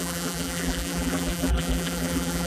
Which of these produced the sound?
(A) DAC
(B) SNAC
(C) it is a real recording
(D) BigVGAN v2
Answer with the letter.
D